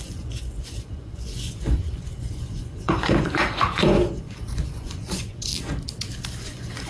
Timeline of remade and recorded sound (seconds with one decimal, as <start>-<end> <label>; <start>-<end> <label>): 0.0-5.5 remade; 5.5-6.4 recorded; 6.4-6.9 remade